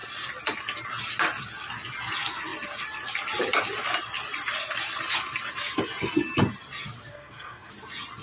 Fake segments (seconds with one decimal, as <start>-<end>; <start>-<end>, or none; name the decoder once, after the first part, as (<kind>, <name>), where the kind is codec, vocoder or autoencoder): 7.1-7.7 (codec, SNAC)